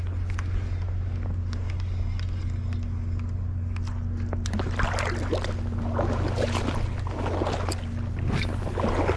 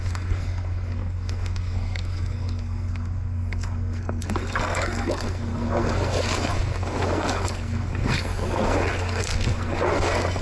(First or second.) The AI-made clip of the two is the second